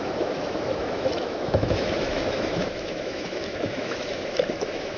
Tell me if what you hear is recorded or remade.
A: remade